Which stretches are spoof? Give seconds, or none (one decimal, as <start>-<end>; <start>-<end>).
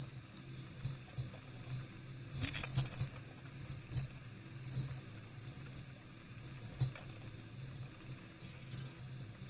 8.4-9.0